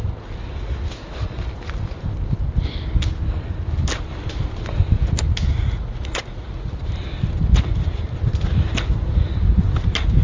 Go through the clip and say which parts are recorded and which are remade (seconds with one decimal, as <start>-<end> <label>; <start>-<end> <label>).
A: 0.0-5.5 recorded; 5.5-6.7 remade; 6.7-10.2 recorded